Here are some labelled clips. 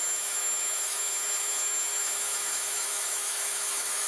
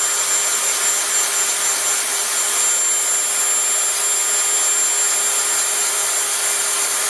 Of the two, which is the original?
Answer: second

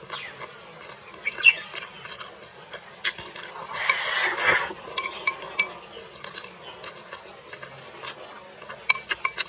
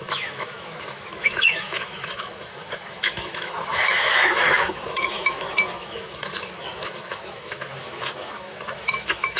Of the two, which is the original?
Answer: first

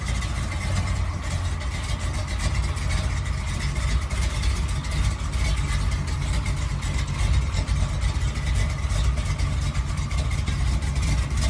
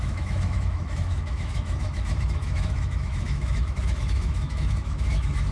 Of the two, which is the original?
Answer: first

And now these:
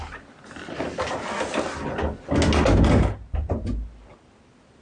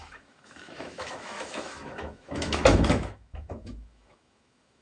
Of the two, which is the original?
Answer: first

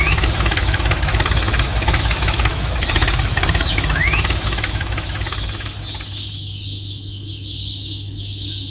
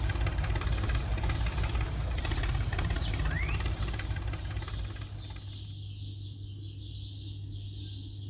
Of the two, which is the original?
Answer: second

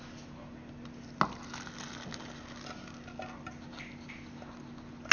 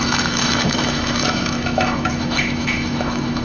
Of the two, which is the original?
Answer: first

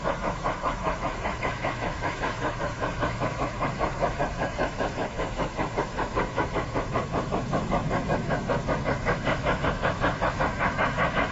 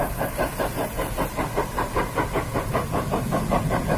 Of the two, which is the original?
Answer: second